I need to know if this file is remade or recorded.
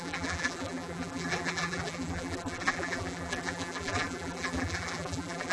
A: remade